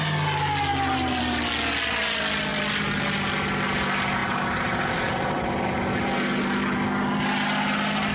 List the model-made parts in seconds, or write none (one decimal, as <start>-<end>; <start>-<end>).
none